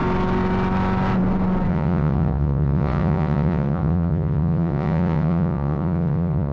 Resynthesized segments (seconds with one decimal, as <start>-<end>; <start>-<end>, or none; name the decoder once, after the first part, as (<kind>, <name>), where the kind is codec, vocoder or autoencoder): 1.7-6.5 (vocoder, Vocos)